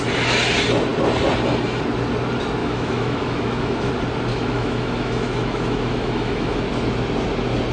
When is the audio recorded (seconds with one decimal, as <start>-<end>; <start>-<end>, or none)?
0.0-2.6; 3.9-4.3; 6.6-7.7